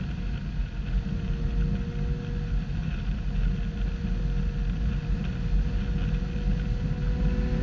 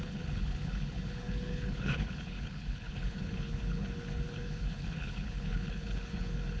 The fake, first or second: second